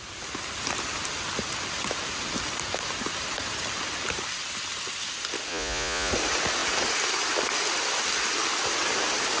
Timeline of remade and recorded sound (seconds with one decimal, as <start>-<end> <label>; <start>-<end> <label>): 0.0-5.5 recorded; 5.5-6.1 remade; 6.1-9.4 recorded